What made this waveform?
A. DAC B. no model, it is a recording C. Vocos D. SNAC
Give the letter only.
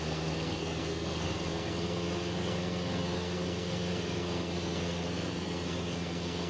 D